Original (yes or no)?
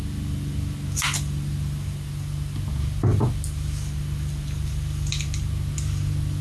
yes